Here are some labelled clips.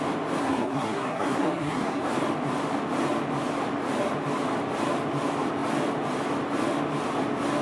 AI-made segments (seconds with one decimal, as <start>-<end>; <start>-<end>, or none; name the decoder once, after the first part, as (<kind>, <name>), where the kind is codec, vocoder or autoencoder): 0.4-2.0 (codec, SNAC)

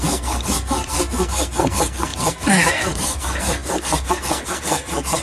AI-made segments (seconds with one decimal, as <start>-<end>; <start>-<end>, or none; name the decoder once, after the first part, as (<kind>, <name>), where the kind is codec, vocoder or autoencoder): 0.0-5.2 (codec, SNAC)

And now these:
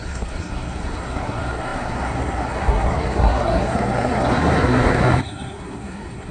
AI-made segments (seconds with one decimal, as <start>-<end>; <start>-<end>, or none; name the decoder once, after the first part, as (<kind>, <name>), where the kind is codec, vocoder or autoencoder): 0.0-6.3 (codec, SNAC)

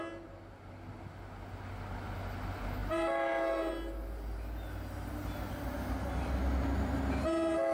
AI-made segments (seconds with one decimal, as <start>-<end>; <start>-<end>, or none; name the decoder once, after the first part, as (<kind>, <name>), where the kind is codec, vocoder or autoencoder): none

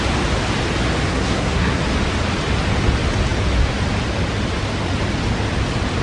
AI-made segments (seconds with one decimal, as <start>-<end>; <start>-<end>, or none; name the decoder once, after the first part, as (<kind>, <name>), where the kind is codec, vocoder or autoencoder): 1.1-1.8 (codec, SNAC)

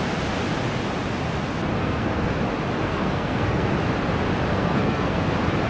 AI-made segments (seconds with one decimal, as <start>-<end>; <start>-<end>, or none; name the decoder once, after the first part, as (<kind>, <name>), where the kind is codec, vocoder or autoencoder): 1.8-2.4 (codec, SNAC); 2.8-3.7; 4.5-5.3